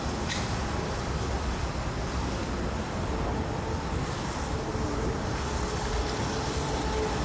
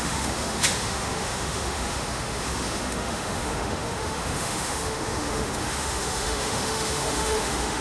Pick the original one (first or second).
first